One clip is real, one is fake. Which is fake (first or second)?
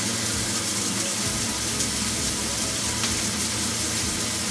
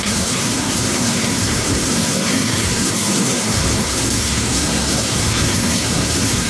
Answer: second